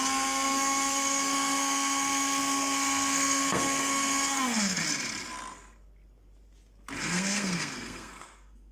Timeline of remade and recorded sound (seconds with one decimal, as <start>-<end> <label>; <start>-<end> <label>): 0.0-4.8 remade; 4.8-7.0 recorded; 7.0-8.7 remade